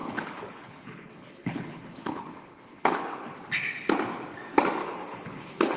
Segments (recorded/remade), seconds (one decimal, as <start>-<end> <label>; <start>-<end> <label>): 0.0-3.3 remade; 3.3-4.8 recorded; 4.8-5.8 remade

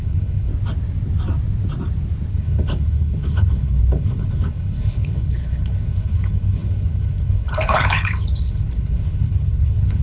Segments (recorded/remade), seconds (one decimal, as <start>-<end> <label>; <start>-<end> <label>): 0.0-0.5 remade; 0.5-2.3 recorded; 2.3-10.0 remade

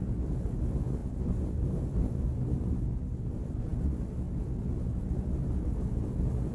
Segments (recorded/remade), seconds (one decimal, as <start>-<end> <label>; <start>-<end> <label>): 0.0-6.5 recorded

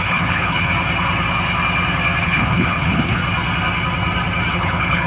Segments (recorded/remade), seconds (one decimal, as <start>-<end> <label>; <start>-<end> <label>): 0.0-0.7 remade; 0.7-2.2 recorded; 2.2-3.2 remade; 3.2-4.5 recorded; 4.5-5.1 remade